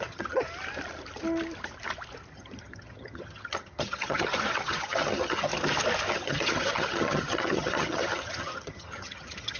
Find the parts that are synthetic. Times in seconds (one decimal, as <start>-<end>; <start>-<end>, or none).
0.0-0.4; 2.3-5.5; 6.1-9.6